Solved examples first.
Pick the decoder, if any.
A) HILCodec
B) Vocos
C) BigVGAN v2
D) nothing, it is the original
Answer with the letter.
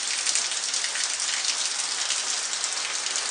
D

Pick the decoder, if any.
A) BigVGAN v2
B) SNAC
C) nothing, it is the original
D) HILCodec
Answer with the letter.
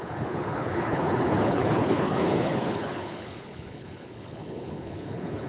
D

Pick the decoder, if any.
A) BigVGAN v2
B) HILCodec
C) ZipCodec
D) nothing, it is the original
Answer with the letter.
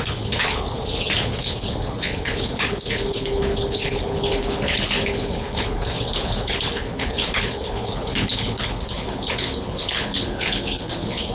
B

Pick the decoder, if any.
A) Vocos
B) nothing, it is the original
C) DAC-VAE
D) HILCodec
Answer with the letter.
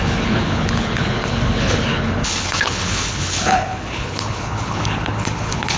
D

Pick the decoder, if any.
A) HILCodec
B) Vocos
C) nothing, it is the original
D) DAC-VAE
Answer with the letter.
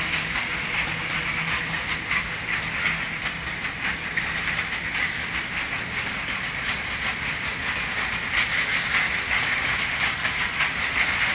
C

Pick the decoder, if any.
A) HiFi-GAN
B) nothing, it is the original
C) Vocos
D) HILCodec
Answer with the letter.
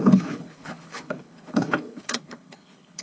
D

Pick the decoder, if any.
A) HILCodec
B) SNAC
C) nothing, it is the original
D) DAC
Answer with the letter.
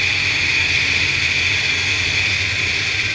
C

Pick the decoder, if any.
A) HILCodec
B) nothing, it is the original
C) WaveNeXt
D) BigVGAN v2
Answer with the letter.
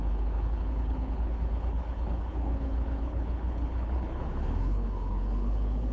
A